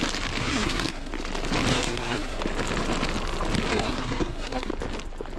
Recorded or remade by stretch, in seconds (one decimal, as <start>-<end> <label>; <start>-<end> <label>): 0.0-0.4 recorded; 0.4-1.1 remade; 1.1-1.7 recorded; 1.7-2.4 remade; 2.4-3.7 recorded; 3.7-4.7 remade; 4.7-5.4 recorded